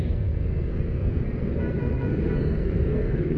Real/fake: fake